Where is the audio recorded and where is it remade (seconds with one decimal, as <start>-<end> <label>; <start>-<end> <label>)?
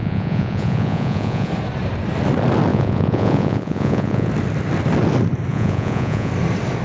0.0-1.5 remade; 1.5-2.7 recorded; 2.7-4.3 remade; 4.3-5.5 recorded; 5.5-6.3 remade; 6.3-6.8 recorded